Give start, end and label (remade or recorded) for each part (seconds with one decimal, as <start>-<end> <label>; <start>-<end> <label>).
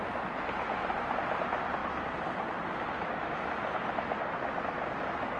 0.0-5.4 recorded